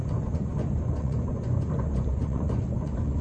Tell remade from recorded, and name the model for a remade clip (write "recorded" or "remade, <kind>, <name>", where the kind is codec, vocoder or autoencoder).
remade, vocoder, Vocos